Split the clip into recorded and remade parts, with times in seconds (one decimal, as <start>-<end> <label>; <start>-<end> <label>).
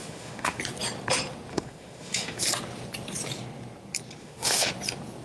0.0-0.6 remade; 0.6-1.5 recorded; 1.5-2.4 remade; 2.4-4.2 recorded; 4.2-4.7 remade; 4.7-5.2 recorded